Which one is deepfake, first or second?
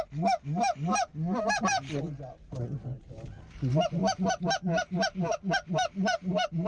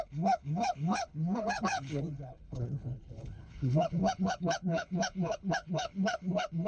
second